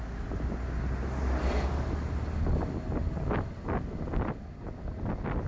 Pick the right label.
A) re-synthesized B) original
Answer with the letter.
B